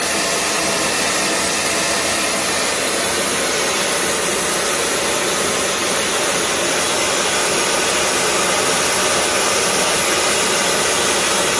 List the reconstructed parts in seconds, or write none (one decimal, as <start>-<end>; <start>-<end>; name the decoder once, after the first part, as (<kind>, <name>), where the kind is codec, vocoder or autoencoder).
none